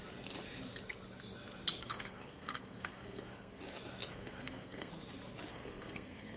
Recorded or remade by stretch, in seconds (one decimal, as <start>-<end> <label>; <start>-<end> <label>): 0.0-1.8 recorded; 1.8-3.6 remade; 3.6-4.1 recorded; 4.1-4.9 remade; 4.9-5.5 recorded; 5.5-6.4 remade